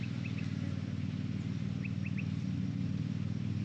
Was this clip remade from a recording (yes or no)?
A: no